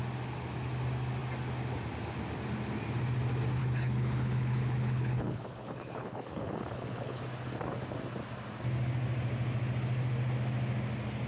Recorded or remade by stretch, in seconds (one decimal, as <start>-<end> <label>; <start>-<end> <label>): 0.0-3.6 recorded; 3.6-7.2 remade; 7.2-11.3 recorded